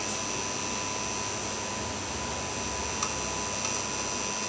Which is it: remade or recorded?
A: recorded